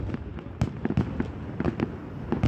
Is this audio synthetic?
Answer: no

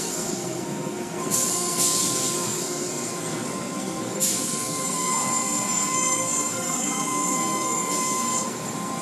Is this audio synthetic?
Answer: yes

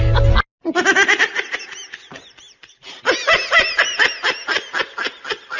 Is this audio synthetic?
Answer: no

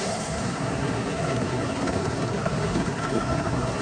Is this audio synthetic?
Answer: yes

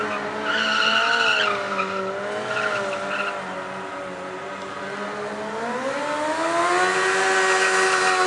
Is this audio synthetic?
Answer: no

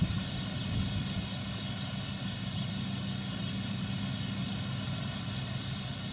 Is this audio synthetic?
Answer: no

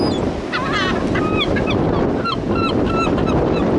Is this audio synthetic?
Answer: no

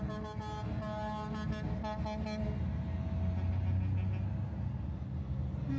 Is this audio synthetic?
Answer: no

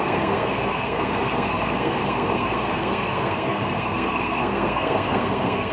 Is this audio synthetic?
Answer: yes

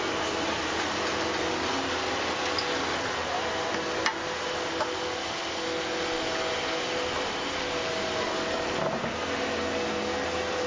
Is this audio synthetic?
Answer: no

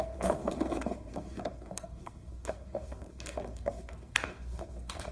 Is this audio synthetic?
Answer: yes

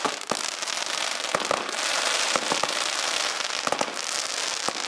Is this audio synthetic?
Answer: no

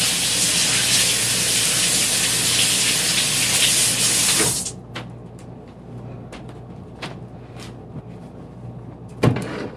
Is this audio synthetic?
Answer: no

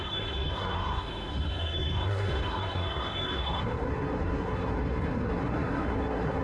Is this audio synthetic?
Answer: yes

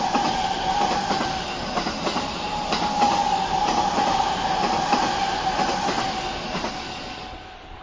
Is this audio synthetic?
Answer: no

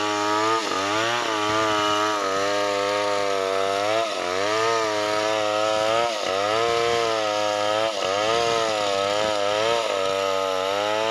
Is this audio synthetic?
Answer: no